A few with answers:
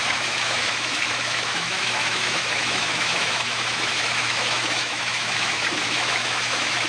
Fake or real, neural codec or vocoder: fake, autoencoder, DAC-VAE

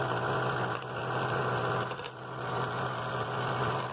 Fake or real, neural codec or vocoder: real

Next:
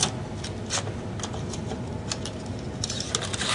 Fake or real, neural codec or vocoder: real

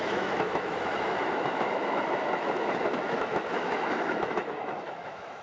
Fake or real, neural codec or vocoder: fake, autoencoder, DAC-VAE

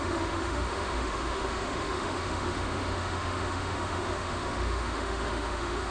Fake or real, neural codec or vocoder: fake, autoencoder, DAC-VAE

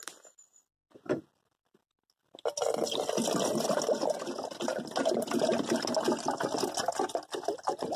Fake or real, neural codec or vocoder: real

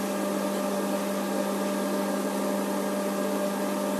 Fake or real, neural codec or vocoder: real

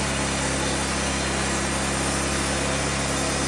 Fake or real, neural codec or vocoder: real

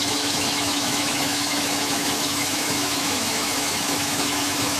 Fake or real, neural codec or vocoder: fake, autoencoder, DAC-VAE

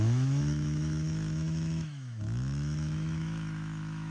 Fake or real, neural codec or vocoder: fake, autoencoder, DAC-VAE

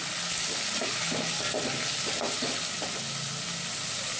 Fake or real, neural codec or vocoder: real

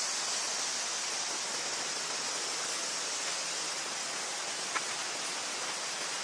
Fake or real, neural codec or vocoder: real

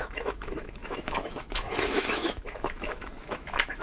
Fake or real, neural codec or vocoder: fake, autoencoder, DAC-VAE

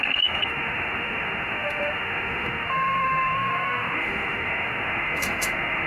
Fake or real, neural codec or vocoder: fake, autoencoder, DAC-VAE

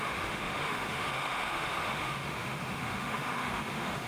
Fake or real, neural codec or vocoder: fake, autoencoder, DAC-VAE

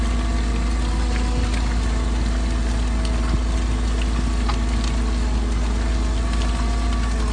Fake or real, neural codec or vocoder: real